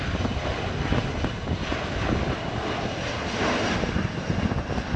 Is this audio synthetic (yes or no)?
no